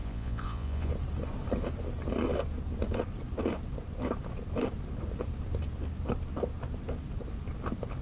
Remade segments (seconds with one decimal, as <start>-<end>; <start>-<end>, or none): 0.0-0.9